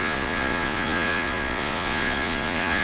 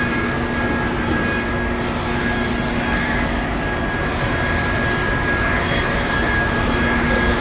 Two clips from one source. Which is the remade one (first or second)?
first